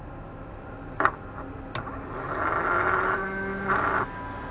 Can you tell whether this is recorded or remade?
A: recorded